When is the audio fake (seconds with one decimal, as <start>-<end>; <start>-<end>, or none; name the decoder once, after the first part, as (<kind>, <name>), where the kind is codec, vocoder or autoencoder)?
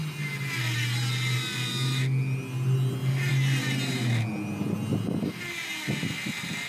4.9-5.4 (vocoder, BigVGAN v2)